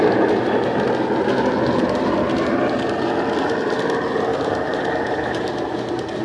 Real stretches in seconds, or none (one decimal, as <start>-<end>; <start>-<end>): 0.0-4.3